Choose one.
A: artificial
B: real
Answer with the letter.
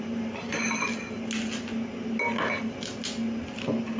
B